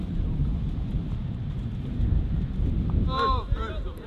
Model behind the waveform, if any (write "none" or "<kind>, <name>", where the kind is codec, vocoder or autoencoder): vocoder, BigVGAN v2